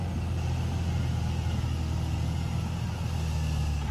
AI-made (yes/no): no